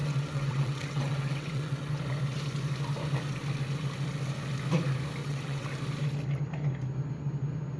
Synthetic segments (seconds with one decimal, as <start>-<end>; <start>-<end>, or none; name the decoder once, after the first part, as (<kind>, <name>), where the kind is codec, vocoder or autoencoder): 0.0-2.0 (vocoder, WaveNeXt); 5.2-5.7